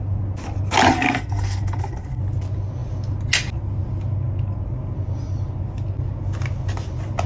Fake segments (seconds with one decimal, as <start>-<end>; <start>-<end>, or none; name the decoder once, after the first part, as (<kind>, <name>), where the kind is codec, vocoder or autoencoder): 0.9-2.2 (codec, SNAC)